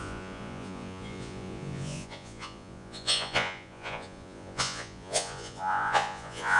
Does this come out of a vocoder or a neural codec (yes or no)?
yes